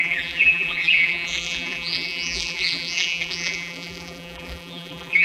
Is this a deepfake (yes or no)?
yes